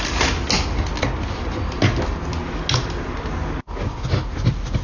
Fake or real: real